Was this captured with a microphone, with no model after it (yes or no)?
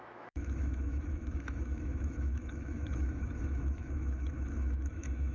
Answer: no